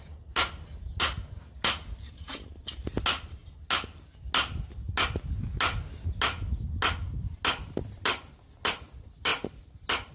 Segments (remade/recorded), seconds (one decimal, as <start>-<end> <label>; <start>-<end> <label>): 0.0-10.1 recorded